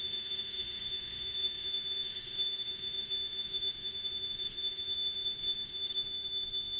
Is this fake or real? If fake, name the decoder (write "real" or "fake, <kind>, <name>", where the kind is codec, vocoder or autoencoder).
fake, autoencoder, DAC-VAE